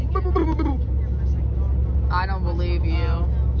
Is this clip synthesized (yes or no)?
no